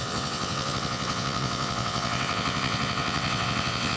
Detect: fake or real fake